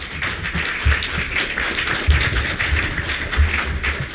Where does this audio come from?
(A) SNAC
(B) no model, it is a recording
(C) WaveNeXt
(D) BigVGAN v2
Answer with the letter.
B